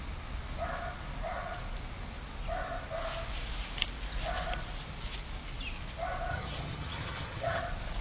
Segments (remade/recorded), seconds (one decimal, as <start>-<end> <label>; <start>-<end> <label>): 0.0-6.3 recorded; 6.3-7.6 remade; 7.6-8.0 recorded